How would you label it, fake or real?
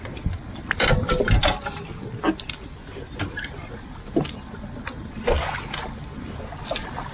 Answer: real